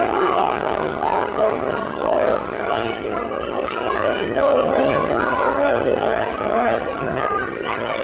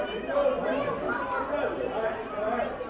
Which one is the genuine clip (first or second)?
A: second